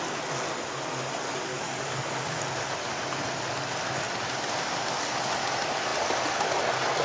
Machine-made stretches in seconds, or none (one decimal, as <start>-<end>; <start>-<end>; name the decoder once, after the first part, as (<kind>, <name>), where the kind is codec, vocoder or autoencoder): 1.5-2.2 (codec, DAC)